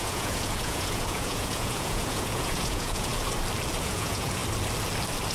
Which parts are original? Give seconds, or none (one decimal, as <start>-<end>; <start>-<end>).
3.1-3.8; 4.4-5.3